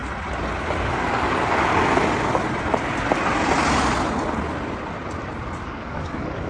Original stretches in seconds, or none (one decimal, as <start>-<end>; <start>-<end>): 0.0-0.9; 1.7-5.6